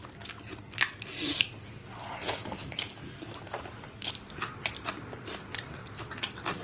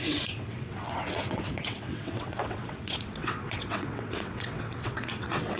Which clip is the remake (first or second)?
second